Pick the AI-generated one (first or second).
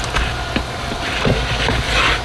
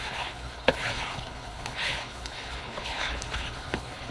second